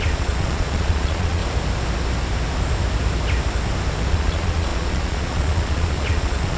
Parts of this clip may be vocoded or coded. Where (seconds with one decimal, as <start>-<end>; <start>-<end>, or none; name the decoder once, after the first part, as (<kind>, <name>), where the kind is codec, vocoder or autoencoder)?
0.0-1.4 (vocoder, Vocos); 4.1-6.6